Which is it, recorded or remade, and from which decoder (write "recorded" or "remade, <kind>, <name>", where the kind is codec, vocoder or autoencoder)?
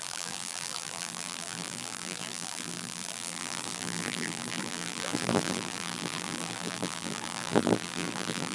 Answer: remade, vocoder, BigVGAN v2